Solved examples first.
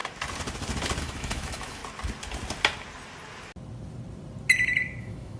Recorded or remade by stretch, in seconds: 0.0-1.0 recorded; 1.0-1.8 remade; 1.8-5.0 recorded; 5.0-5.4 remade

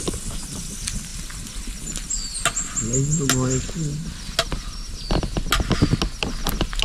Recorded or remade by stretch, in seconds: 0.0-6.8 recorded